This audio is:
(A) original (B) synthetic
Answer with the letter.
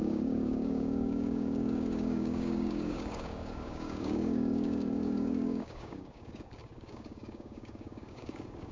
B